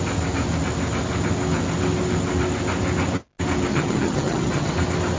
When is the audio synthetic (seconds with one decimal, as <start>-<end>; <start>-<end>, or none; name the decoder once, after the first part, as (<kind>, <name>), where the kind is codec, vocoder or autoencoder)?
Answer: 3.7-4.7 (vocoder, HiFi-GAN)